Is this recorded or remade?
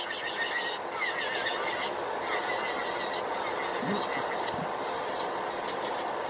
recorded